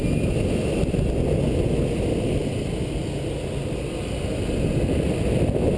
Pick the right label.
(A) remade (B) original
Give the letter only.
B